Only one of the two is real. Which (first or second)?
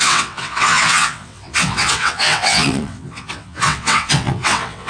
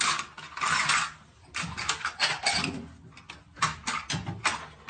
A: second